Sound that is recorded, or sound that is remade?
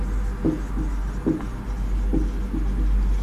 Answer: recorded